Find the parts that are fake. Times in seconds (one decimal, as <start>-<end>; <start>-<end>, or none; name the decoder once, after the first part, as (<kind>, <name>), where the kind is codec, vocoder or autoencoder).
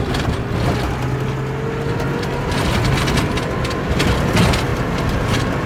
none